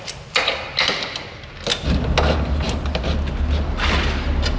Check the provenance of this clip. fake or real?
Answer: real